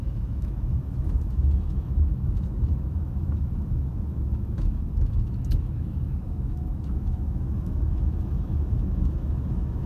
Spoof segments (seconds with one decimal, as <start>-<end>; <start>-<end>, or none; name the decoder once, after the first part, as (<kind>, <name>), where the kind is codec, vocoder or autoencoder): 0.0-9.9 (autoencoder, DAC-VAE)